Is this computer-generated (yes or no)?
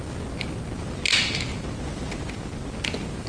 no